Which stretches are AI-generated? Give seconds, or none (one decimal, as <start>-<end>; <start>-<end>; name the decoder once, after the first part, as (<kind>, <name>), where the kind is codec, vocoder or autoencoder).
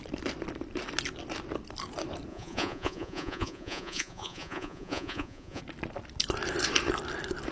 2.3-5.6 (vocoder, Vocos)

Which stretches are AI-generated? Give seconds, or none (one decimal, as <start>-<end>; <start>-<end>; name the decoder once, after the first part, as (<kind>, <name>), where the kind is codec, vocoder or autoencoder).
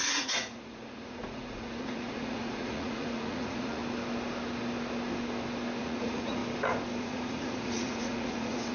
0.0-3.8 (vocoder, Vocos); 5.8-6.4; 7.0-8.7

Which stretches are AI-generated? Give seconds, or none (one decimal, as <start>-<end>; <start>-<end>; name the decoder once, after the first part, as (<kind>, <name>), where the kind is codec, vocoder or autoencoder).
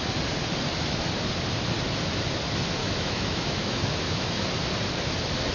2.8-4.5 (autoencoder, DAC-VAE)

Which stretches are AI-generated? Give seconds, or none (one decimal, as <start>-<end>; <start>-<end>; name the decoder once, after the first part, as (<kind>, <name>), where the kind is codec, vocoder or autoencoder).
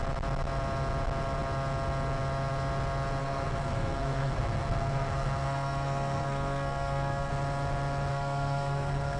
3.2-7.3 (codec, SNAC); 8.1-9.2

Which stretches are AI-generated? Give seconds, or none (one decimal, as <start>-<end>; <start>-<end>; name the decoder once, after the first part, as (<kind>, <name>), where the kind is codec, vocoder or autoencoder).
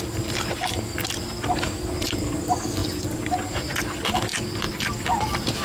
none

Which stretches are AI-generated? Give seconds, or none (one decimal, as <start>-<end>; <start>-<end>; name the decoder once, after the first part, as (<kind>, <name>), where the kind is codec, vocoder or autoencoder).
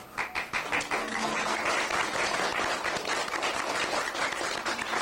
1.0-1.6 (codec, SNAC)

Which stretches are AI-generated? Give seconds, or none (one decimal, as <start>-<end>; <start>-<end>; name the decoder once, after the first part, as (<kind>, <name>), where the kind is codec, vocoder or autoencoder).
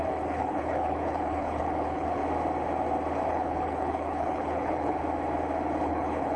0.0-2.2 (codec, HILCodec); 3.3-5.0; 5.8-6.4